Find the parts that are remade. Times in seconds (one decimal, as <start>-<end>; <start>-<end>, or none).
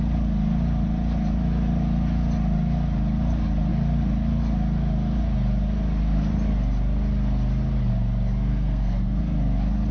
8.5-9.2